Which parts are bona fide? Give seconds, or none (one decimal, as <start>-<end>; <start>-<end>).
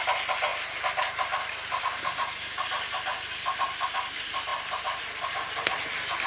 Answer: 0.0-6.3